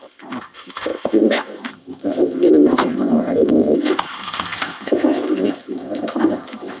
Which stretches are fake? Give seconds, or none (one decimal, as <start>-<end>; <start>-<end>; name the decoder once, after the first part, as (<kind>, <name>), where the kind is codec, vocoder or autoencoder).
0.0-6.8 (codec, ZipCodec)